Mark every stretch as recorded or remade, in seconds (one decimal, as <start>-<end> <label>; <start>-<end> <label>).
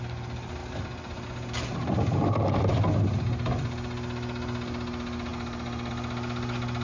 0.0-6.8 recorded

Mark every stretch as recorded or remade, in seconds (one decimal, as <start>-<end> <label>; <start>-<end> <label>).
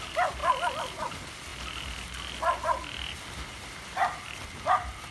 0.0-5.1 recorded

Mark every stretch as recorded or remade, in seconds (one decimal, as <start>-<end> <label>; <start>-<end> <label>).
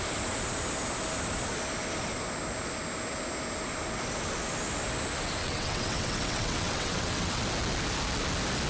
0.0-5.4 recorded; 5.4-7.4 remade; 7.4-8.7 recorded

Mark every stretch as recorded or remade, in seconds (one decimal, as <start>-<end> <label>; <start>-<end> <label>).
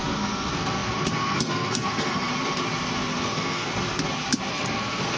0.0-2.3 remade; 2.3-3.2 recorded; 3.2-3.7 remade; 3.7-4.5 recorded; 4.5-5.2 remade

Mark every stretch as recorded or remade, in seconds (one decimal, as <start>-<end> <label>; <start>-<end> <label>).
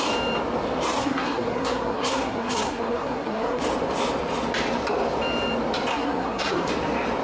0.0-1.0 recorded; 1.0-3.6 remade; 3.6-5.9 recorded; 5.9-6.7 remade; 6.7-7.2 recorded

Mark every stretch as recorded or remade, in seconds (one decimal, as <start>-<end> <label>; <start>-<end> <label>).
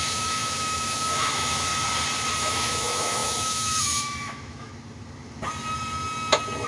0.0-1.7 remade; 1.7-2.4 recorded; 2.4-4.7 remade; 4.7-6.7 recorded